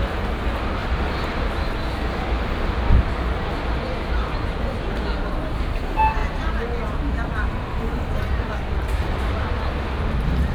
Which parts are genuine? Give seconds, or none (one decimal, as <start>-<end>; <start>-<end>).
0.0-10.5